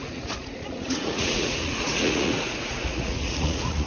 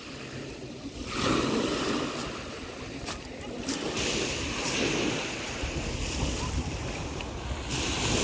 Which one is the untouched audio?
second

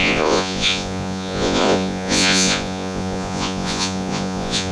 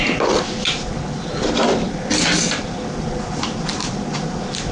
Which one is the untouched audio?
second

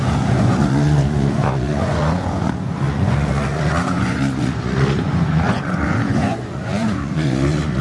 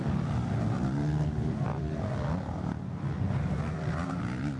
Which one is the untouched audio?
second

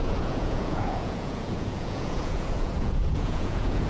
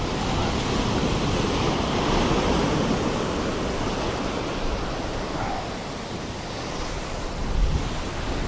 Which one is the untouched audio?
second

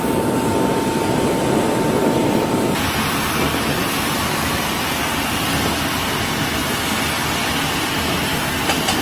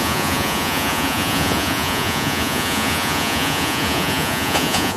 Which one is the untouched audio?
first